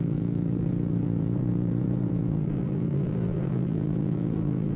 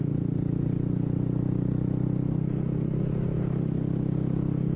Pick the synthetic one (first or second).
first